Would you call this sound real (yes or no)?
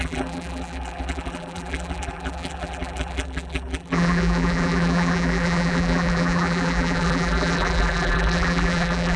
no